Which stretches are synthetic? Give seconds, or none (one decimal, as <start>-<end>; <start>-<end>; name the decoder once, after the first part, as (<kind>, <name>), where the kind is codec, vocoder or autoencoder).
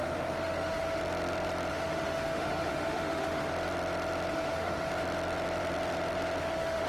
0.0-1.0 (autoencoder, DAC-VAE); 1.7-3.5; 4.3-4.9; 6.4-6.9